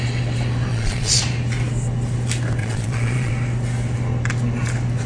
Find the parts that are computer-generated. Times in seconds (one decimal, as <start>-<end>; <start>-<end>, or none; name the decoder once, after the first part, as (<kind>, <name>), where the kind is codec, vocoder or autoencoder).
0.7-1.2 (vocoder, Vocos); 2.6-3.3